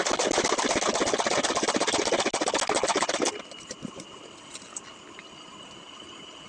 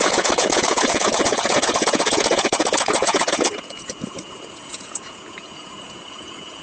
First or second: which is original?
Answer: first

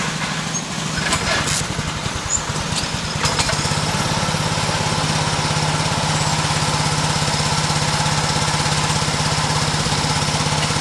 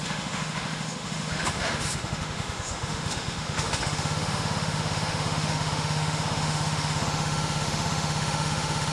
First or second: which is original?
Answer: first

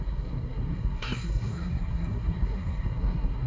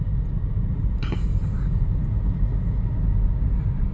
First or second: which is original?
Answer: second